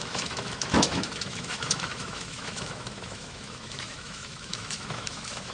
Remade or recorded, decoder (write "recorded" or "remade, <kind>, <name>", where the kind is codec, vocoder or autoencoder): remade, autoencoder, DAC-VAE